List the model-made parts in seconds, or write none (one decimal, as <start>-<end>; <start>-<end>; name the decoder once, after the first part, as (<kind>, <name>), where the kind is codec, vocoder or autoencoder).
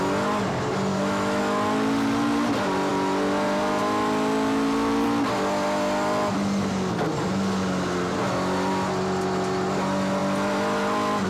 0.9-1.4 (autoencoder, DAC-VAE)